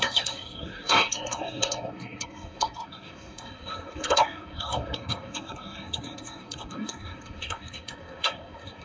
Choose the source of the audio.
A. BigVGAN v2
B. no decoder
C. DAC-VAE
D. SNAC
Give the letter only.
D